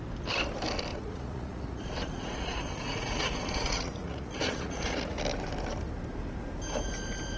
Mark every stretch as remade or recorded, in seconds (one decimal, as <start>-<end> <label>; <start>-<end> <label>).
0.0-0.9 recorded; 0.9-5.2 remade; 5.2-7.4 recorded